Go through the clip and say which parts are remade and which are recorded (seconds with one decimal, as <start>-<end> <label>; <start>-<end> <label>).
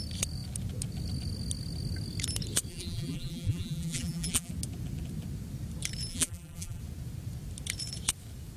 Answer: 0.0-2.7 recorded; 2.7-4.5 remade; 4.5-6.1 recorded; 6.1-6.8 remade; 6.8-8.6 recorded